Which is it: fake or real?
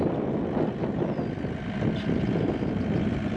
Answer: real